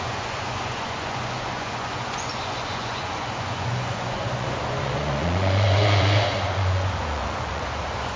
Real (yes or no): no